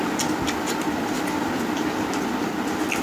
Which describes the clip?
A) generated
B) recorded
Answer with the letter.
B